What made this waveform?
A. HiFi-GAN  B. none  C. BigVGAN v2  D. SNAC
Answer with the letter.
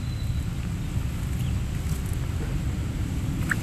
B